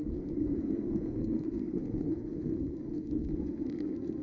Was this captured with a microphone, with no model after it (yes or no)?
no